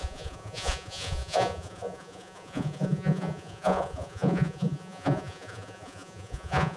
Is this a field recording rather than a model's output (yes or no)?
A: no